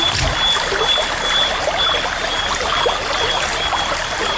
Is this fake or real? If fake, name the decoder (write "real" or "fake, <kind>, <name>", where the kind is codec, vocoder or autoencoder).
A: real